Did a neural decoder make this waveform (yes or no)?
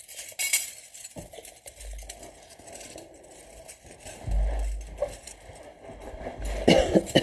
no